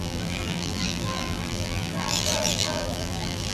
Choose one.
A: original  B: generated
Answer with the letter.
B